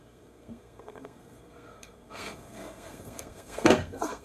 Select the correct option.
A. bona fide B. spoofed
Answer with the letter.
B